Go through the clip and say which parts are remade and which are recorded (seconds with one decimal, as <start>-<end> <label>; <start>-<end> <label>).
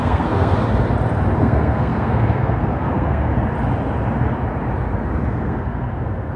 0.0-0.5 remade; 0.5-1.4 recorded; 1.4-3.3 remade; 3.3-5.3 recorded; 5.3-6.4 remade